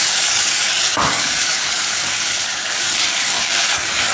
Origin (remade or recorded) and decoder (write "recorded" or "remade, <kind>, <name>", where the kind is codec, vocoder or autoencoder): remade, codec, DAC